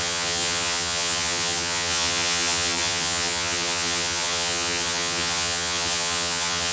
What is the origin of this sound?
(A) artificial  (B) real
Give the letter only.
A